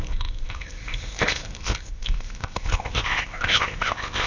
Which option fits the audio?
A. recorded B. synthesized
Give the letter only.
B